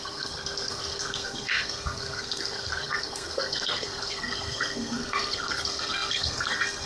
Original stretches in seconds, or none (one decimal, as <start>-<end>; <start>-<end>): none